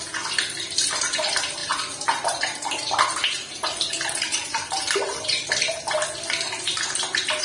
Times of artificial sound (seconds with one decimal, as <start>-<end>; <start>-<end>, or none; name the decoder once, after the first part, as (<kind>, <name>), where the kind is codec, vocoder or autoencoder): 1.6-5.5 (vocoder, BigVGAN v2)